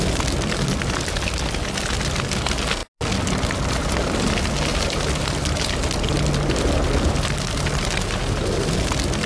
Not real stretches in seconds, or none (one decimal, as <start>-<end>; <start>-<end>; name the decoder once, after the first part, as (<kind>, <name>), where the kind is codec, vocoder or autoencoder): none